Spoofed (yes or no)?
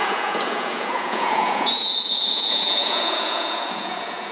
yes